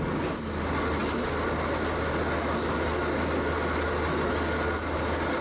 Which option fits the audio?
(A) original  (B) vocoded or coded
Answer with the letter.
A